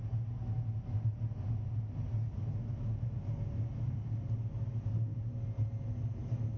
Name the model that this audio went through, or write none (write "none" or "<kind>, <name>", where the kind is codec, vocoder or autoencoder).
none